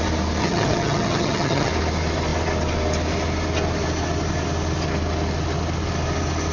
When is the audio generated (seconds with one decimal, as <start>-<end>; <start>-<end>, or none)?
0.4-1.7